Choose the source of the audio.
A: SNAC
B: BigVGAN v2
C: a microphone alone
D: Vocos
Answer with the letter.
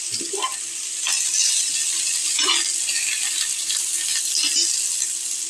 C